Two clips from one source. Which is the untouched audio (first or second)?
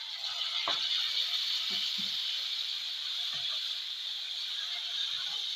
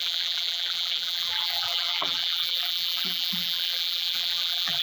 first